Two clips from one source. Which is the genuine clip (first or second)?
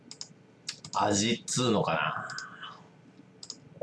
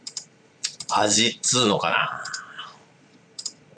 first